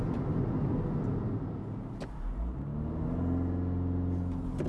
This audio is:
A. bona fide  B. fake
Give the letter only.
A